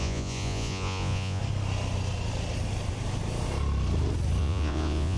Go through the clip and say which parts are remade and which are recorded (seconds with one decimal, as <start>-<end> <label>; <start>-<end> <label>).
0.0-1.4 remade; 1.4-4.4 recorded; 4.4-5.2 remade